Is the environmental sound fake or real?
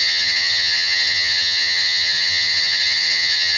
fake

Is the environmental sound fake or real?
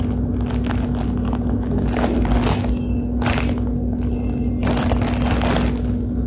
real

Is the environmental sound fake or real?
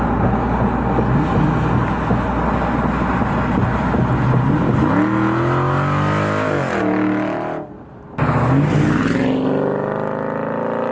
real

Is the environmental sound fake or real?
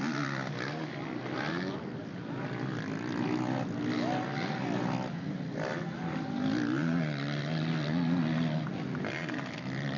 real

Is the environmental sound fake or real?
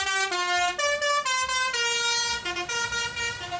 real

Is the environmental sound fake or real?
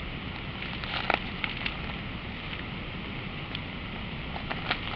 real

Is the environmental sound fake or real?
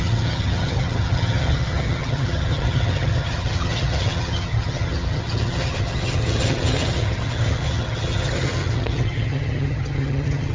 fake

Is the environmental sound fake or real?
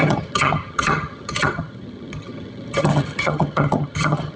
fake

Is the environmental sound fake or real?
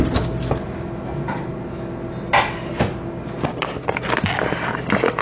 real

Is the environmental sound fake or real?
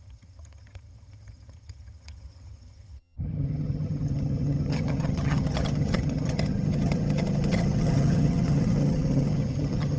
fake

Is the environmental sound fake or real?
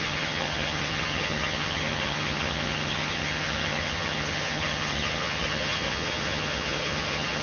fake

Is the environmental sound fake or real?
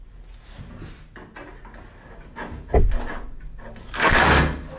real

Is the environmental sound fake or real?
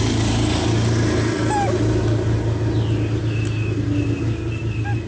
real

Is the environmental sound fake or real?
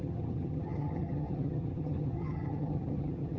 fake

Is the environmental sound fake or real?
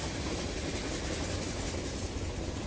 real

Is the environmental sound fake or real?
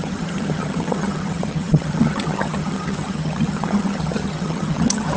fake